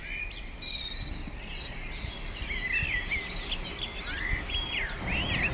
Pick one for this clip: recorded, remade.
recorded